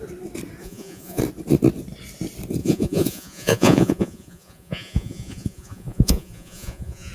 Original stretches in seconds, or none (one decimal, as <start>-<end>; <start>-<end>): 0.0-0.6; 1.2-2.6